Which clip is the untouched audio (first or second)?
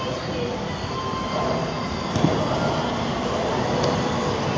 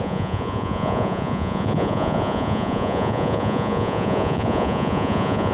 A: first